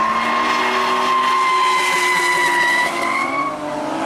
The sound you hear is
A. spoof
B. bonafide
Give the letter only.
B